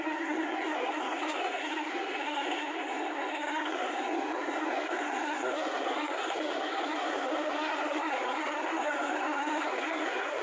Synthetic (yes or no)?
yes